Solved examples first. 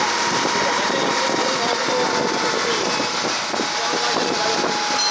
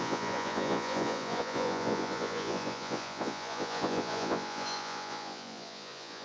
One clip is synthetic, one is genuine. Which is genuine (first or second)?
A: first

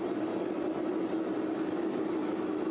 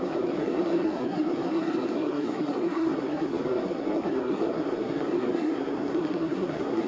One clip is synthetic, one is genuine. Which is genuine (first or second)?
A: first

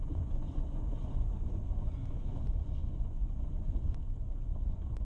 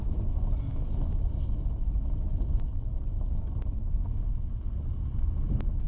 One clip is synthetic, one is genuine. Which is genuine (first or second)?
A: second